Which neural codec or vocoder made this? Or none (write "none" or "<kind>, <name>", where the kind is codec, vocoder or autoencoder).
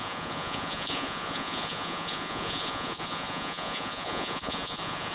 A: vocoder, Vocos